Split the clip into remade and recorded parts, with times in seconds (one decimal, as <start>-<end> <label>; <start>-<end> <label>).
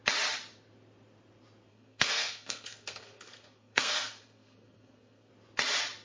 0.0-1.7 recorded; 1.7-5.3 remade; 5.3-6.0 recorded